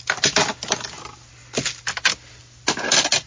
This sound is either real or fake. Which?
real